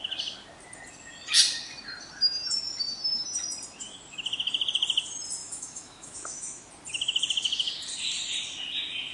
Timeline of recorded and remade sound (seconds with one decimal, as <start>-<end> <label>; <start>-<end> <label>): 0.0-5.4 recorded; 5.4-6.7 remade; 6.7-9.1 recorded